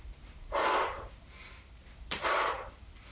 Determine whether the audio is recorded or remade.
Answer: remade